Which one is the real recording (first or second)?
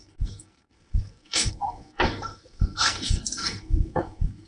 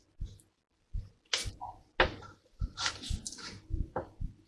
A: second